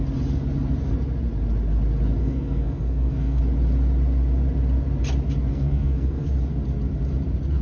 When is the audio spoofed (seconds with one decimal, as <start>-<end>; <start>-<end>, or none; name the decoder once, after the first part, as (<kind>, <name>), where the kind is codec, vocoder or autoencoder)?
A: 2.2-3.4 (codec, SNAC); 5.5-6.3